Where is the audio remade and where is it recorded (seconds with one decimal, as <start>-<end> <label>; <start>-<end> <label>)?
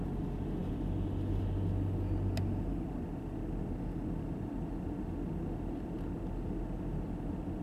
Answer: 0.0-7.6 recorded